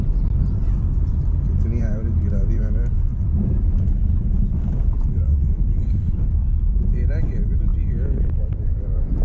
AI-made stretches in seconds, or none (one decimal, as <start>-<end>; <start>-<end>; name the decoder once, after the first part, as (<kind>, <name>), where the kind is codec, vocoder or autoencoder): 0.0-0.6 (vocoder, BigVGAN v2); 1.8-7.7; 8.4-9.2